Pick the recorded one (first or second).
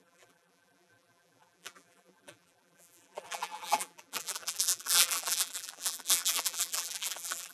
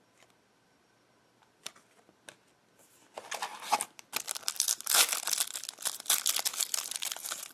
second